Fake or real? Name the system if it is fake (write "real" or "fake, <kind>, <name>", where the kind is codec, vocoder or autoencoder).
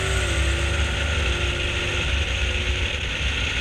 real